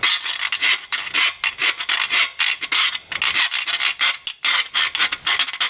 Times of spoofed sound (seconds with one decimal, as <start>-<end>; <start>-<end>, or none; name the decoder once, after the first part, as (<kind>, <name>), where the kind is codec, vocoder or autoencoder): none